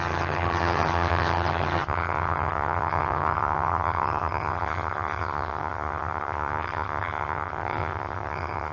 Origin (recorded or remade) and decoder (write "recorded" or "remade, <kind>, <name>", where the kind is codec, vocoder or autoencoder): remade, vocoder, HiFi-GAN